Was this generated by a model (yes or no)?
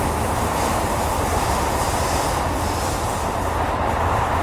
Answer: no